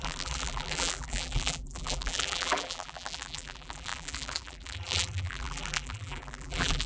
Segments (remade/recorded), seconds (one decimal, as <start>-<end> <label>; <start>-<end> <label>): 0.0-6.9 remade